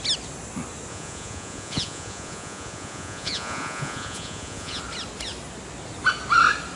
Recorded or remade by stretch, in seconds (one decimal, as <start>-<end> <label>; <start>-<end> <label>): 0.0-0.9 recorded; 0.9-4.8 remade; 4.8-6.8 recorded

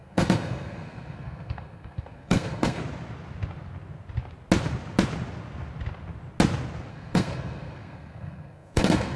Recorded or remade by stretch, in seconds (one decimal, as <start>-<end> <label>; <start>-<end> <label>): 0.0-2.8 remade; 2.8-6.9 recorded; 6.9-9.2 remade